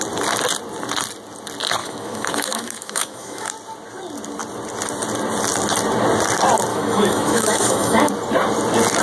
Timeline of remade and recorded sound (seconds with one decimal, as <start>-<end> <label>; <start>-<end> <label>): 0.0-1.8 recorded; 1.8-3.5 remade; 3.5-6.7 recorded; 6.7-8.1 remade; 8.1-9.0 recorded